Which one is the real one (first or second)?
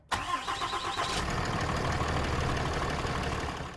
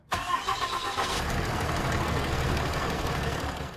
first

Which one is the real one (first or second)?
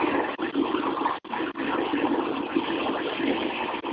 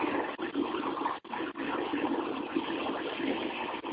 first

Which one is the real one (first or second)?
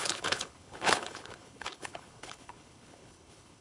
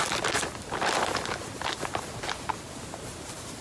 second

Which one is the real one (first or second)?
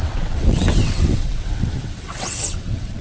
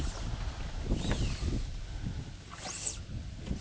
second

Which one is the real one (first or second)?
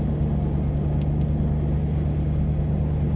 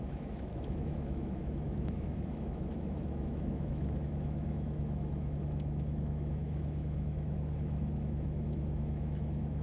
first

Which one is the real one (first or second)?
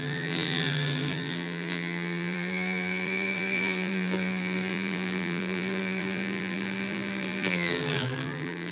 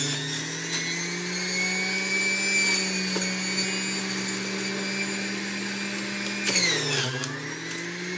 second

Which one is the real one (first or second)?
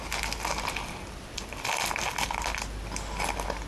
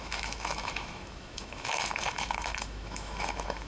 first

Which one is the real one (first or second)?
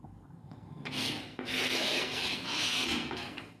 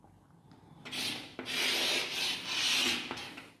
second